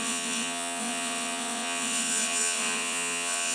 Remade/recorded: remade